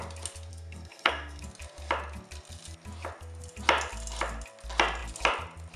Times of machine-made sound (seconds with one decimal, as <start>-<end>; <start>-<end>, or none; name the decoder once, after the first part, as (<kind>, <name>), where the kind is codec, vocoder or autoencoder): 0.5-1.4 (codec, SNAC)